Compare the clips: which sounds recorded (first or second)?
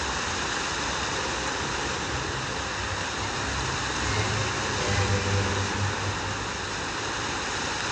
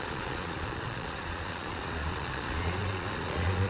first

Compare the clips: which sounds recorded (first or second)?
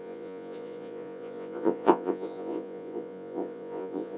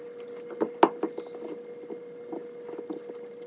second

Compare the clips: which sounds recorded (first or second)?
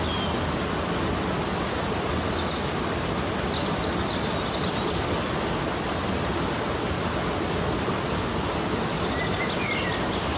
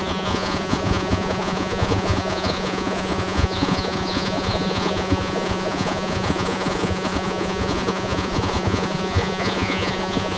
first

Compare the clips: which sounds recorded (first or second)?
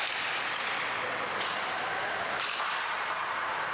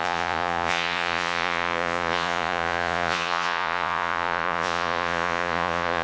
first